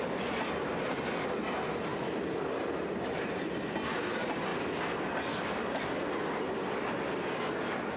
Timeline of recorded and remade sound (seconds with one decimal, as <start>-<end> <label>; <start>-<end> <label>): 0.0-8.0 recorded